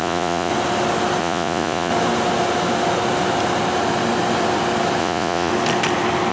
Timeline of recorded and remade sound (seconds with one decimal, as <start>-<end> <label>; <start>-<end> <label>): 0.0-0.5 remade; 0.5-1.2 recorded; 1.2-1.9 remade; 1.9-5.0 recorded; 5.0-5.5 remade; 5.5-6.3 recorded

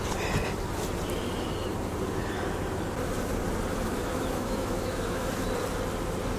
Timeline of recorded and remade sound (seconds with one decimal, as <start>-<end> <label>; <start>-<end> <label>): 0.0-3.7 recorded; 3.7-5.3 remade; 5.3-6.4 recorded

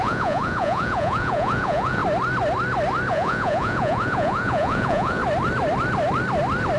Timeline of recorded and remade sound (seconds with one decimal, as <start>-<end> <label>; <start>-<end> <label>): 0.0-2.0 remade; 2.0-3.1 recorded; 3.1-5.2 remade; 5.2-6.8 recorded

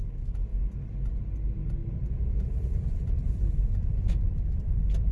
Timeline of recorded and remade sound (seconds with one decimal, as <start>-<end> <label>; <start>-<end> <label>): 0.0-5.1 recorded